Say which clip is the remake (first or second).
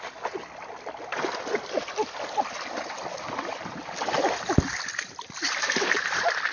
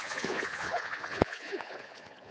second